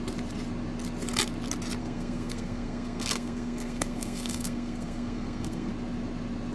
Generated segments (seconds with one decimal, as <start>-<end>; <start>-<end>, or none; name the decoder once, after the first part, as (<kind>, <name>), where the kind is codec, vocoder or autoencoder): 1.8-5.7 (codec, SNAC)